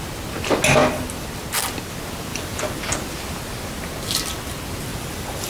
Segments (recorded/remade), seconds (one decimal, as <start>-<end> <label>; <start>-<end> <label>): 0.0-2.3 recorded; 2.3-2.8 remade; 2.8-4.9 recorded; 4.9-5.5 remade

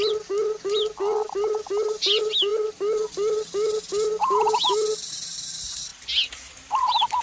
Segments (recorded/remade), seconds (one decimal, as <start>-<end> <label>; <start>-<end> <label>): 0.0-7.2 recorded

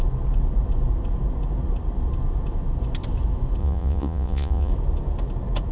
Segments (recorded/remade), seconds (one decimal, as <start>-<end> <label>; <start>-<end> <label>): 0.0-3.6 recorded; 3.6-4.7 remade; 4.7-5.7 recorded

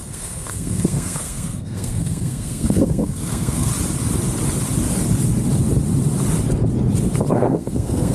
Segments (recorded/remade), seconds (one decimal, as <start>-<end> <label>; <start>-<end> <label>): 0.0-3.7 remade; 3.7-7.3 recorded; 7.3-8.1 remade

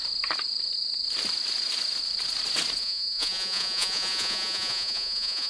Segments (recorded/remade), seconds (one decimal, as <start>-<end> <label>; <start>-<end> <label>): 0.0-2.8 recorded; 2.8-5.5 remade

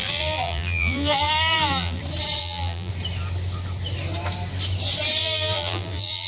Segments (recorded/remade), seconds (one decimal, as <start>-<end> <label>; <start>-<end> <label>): 0.0-2.0 remade; 2.0-2.4 recorded; 2.4-2.9 remade; 2.9-5.2 recorded; 5.2-6.3 remade

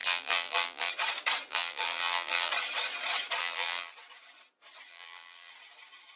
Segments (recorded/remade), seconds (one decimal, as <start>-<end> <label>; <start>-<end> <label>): 0.0-0.9 remade; 0.9-1.5 recorded; 1.5-2.5 remade; 2.5-3.4 recorded; 3.4-3.9 remade; 3.9-4.9 recorded; 4.9-5.5 remade; 5.5-6.2 recorded